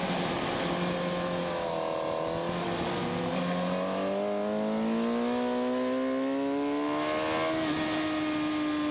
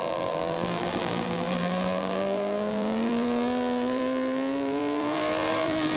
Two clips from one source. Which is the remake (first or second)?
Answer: second